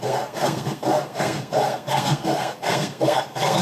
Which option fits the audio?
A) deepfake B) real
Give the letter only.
A